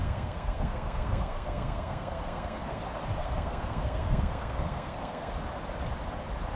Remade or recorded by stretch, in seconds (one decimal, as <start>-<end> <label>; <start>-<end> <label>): 0.0-2.8 remade; 2.8-3.2 recorded; 3.2-5.3 remade; 5.3-6.6 recorded